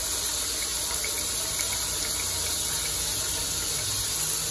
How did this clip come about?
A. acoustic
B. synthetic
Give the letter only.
A